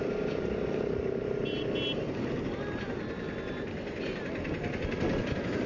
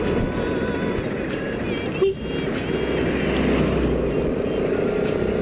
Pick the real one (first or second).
second